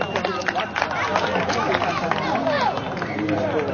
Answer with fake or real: real